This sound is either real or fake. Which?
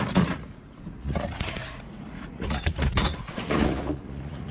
fake